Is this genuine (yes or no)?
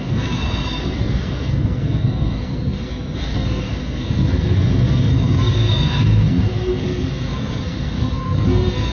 no